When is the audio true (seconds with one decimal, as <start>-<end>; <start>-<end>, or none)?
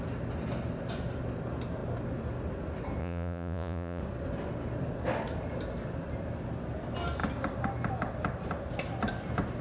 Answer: 0.0-3.0; 4.0-9.6